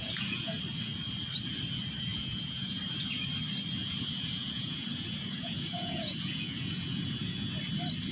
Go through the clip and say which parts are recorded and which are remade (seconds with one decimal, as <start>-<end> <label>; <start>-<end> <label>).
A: 0.0-0.6 remade; 0.6-2.1 recorded; 2.1-2.8 remade; 2.8-3.8 recorded; 3.8-7.6 remade; 7.6-8.1 recorded